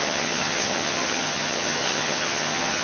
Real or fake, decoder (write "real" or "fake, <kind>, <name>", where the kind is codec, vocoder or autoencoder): fake, vocoder, HiFi-GAN